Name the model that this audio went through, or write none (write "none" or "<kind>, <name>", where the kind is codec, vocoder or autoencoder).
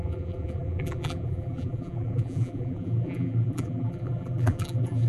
vocoder, BigVGAN v2